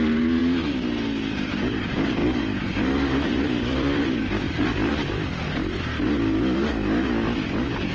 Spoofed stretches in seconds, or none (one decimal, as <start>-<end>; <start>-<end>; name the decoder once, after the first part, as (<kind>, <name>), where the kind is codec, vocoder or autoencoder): 2.2-5.8 (vocoder, BigVGAN v2)